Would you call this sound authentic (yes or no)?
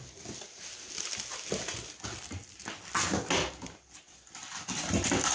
yes